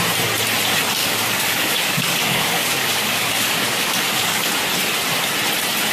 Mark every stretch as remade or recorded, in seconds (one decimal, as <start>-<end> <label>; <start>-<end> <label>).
0.0-1.0 recorded; 1.0-4.5 remade; 4.5-5.9 recorded